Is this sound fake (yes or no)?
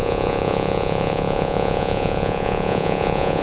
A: yes